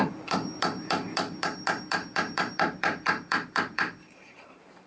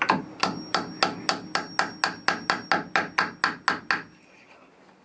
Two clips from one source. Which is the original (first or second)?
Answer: second